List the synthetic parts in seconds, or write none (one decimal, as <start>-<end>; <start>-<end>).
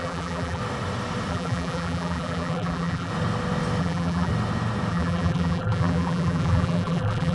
0.0-0.6; 1.3-3.1; 3.8-4.3; 4.9-7.3